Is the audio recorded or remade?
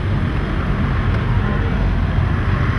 recorded